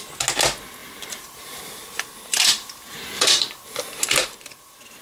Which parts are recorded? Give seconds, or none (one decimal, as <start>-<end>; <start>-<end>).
0.0-0.8; 3.8-4.2